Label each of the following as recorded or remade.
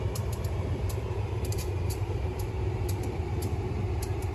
remade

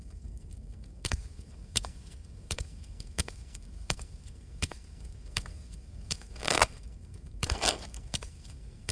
remade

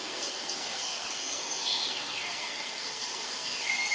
remade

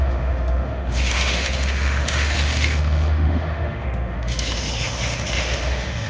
remade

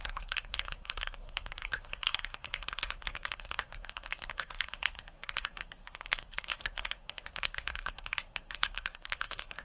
remade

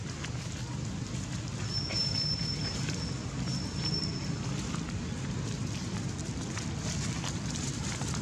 recorded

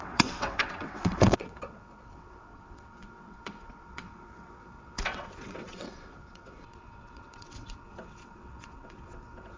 remade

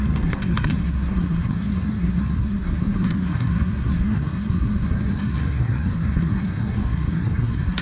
remade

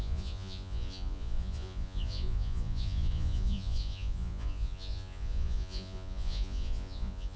remade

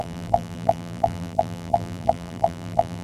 remade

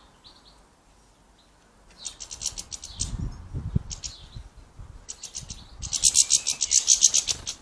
recorded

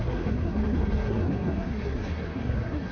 remade